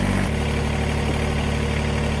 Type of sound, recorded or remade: recorded